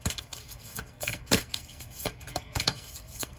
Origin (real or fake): fake